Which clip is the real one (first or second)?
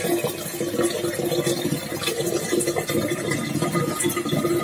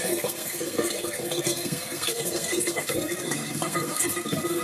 first